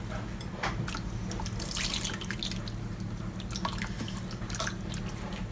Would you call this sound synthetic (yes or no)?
no